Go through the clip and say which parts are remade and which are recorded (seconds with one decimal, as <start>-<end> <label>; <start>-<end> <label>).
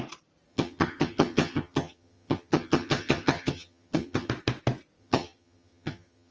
0.0-0.5 recorded; 0.5-4.3 remade; 4.3-5.0 recorded; 5.0-6.3 remade